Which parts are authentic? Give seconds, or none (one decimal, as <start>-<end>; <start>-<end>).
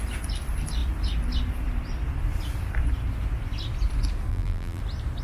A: 0.0-4.3; 4.8-5.2